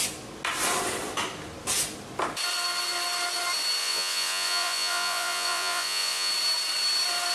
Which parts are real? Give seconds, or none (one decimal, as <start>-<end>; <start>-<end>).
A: 0.0-3.8; 6.3-7.3